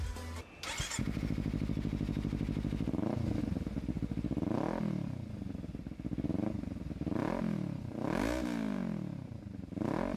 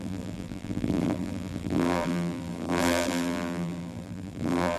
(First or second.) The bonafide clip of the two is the first